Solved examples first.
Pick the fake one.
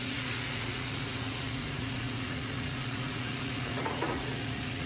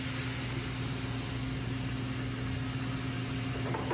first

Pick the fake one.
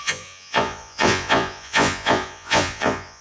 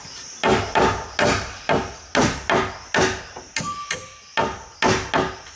first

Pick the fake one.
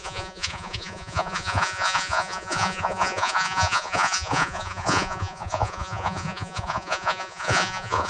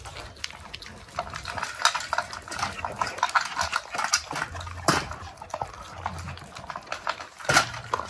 first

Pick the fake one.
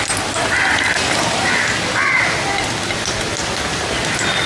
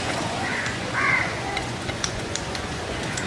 second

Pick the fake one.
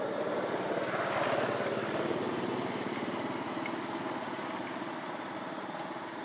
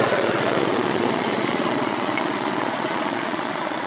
second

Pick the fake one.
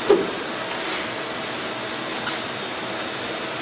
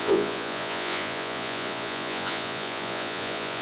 second